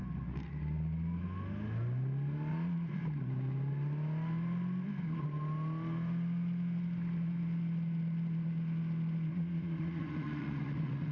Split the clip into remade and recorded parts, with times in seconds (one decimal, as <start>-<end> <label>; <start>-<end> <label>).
0.0-2.5 recorded; 2.5-3.0 remade; 3.0-9.3 recorded; 9.3-11.1 remade